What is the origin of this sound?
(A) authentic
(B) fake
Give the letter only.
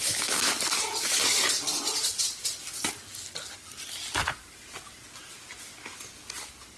A